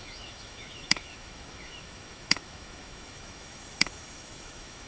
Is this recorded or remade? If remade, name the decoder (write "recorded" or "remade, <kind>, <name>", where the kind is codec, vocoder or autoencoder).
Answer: remade, autoencoder, DAC-VAE